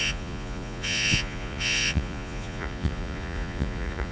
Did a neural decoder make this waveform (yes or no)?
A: yes